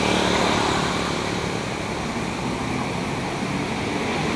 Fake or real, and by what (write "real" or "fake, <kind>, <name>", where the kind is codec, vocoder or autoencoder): real